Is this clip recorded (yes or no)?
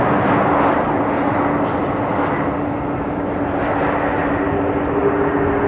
yes